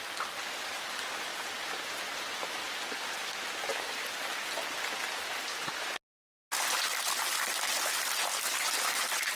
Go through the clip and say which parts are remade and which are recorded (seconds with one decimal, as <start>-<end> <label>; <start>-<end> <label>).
0.0-9.4 recorded